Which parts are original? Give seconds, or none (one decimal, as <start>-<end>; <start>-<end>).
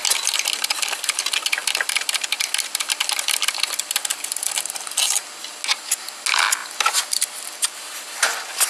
0.0-8.7